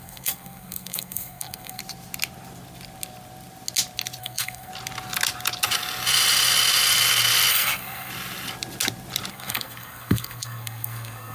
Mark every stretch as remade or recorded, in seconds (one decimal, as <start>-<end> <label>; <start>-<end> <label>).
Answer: 0.0-1.8 remade; 1.8-4.2 recorded; 4.2-4.7 remade; 4.7-7.5 recorded; 7.5-8.1 remade; 8.1-9.3 recorded; 9.3-11.3 remade